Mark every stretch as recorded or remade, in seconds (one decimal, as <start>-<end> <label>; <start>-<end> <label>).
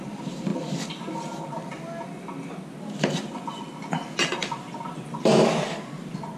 0.0-6.4 recorded